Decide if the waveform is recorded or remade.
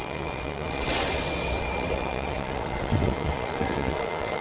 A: remade